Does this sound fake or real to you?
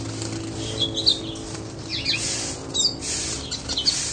real